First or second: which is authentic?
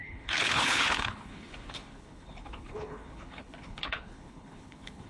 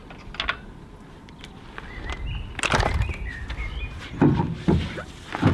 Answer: second